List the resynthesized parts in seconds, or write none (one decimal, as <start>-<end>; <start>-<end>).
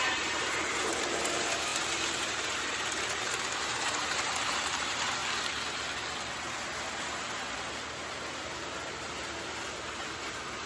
0.0-1.7; 2.2-5.2; 10.2-10.7